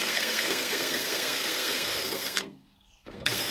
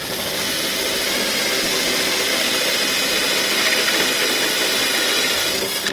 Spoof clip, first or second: first